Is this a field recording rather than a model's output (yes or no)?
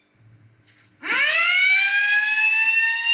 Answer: yes